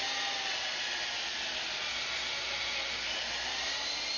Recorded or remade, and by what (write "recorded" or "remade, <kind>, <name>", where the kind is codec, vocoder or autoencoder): recorded